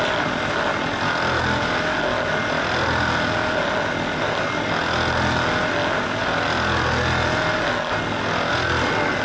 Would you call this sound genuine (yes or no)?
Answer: yes